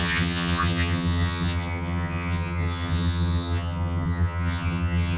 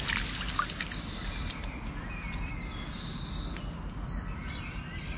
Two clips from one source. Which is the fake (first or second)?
first